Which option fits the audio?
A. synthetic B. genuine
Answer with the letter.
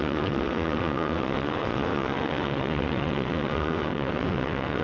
A